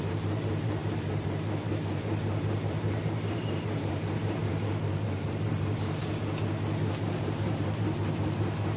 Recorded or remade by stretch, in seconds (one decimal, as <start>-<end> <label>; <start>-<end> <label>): 0.0-6.0 remade; 6.0-7.2 recorded; 7.2-8.8 remade